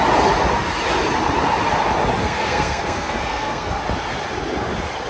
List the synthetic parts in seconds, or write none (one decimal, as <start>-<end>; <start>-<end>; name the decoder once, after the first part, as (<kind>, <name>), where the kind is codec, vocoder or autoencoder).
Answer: 2.2-3.8 (codec, SNAC)